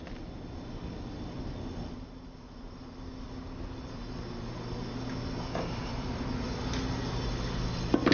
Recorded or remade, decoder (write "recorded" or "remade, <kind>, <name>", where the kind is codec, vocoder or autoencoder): recorded